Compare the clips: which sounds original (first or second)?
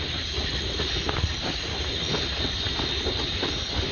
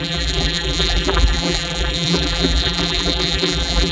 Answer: first